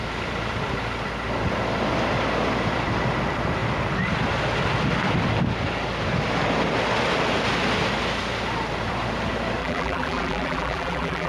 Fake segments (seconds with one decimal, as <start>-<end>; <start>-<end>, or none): 9.6-11.3